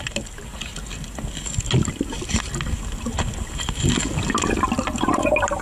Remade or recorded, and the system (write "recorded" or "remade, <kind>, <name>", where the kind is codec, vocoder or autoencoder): recorded